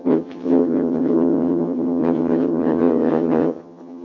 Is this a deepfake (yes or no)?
yes